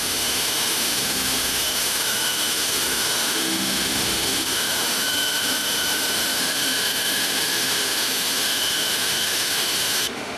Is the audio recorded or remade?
remade